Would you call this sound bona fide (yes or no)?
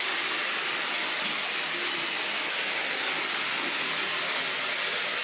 yes